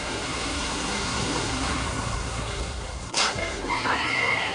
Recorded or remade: remade